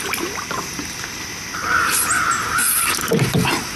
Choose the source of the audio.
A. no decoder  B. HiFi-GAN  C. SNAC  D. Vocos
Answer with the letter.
A